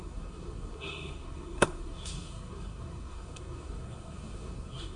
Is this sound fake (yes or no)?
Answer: yes